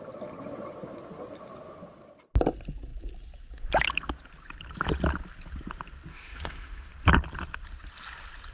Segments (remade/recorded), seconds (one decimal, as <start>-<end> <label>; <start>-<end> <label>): 0.0-6.1 recorded; 6.1-6.9 remade; 6.9-8.5 recorded